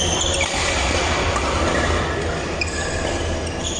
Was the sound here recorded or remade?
recorded